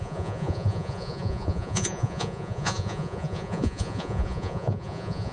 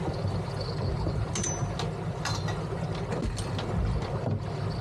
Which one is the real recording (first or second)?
second